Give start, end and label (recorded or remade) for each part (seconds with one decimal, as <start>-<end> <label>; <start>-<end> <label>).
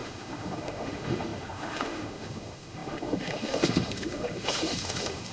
0.0-5.3 remade